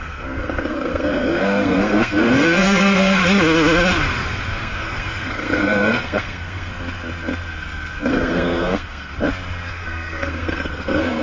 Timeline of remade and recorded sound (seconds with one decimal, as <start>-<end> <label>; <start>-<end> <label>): 0.0-3.2 remade; 3.2-4.6 recorded; 4.6-6.7 remade; 6.7-8.1 recorded; 8.1-9.1 remade; 9.1-9.7 recorded; 9.7-11.2 remade